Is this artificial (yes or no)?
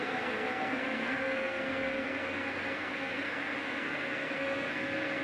yes